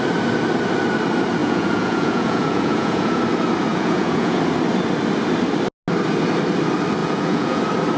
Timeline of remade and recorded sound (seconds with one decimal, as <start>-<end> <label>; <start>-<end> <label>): 0.0-1.4 recorded; 1.4-3.2 remade; 3.2-3.7 recorded; 3.7-4.4 remade; 4.4-7.0 recorded; 7.0-7.6 remade; 7.6-8.0 recorded

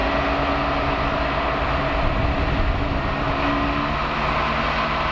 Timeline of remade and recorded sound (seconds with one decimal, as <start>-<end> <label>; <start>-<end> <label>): 0.0-5.1 recorded

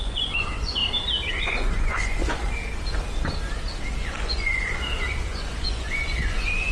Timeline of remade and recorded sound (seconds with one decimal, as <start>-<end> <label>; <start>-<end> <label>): 0.0-0.8 remade; 0.8-1.3 recorded; 1.3-2.6 remade; 2.6-4.0 recorded; 4.0-6.7 remade

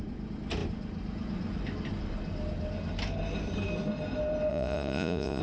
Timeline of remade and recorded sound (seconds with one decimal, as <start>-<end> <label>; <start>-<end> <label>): 0.0-4.5 recorded; 4.5-5.4 remade

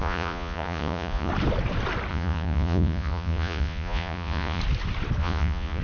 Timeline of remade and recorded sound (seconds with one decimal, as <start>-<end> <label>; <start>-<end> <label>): 0.0-1.3 remade; 1.3-2.1 recorded; 2.1-4.6 remade; 4.6-5.2 recorded; 5.2-5.8 remade

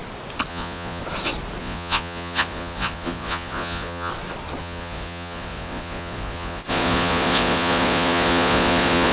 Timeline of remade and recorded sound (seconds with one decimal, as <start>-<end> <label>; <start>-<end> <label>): 0.0-0.5 recorded; 0.5-1.0 remade; 1.0-1.6 recorded; 1.6-4.1 remade; 4.1-4.6 recorded; 4.6-9.1 remade

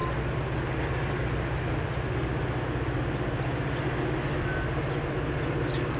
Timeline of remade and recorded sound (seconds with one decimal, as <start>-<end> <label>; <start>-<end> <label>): 0.0-6.0 recorded

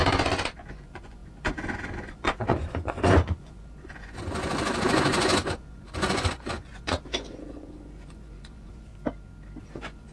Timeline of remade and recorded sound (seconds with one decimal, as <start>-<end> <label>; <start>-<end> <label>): 0.0-8.9 remade; 8.9-9.6 recorded; 9.6-10.1 remade